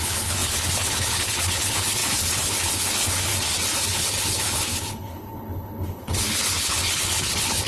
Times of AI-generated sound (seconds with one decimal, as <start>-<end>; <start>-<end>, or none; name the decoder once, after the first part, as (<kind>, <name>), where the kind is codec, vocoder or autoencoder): 0.0-3.3 (codec, HILCodec); 3.9-7.7